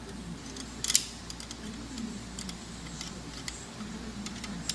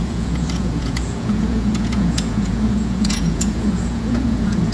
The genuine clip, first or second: first